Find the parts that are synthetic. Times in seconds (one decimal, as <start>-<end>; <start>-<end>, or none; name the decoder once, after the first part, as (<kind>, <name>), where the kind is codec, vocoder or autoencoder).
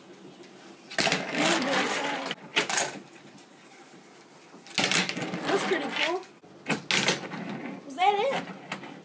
2.5-4.0 (vocoder, BigVGAN v2)